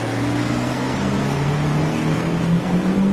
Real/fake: fake